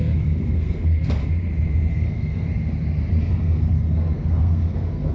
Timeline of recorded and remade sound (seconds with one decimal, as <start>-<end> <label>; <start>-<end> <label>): 0.0-1.2 remade; 1.2-1.9 recorded; 1.9-2.5 remade; 2.5-3.2 recorded; 3.2-5.1 remade